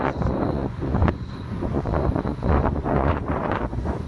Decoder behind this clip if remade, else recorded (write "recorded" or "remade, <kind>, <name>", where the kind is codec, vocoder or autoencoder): remade, vocoder, Vocos